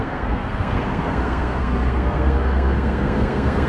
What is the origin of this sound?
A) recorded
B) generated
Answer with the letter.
B